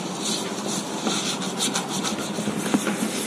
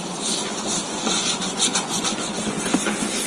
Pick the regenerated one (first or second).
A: second